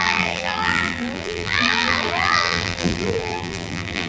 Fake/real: fake